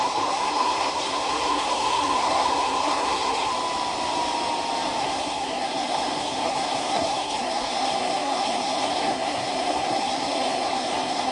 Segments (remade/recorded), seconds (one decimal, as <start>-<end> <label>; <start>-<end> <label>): 0.0-3.5 remade; 3.5-5.0 recorded; 5.0-11.3 remade